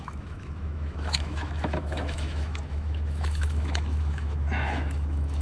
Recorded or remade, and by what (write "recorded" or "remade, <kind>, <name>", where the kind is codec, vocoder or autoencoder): remade, autoencoder, DAC-VAE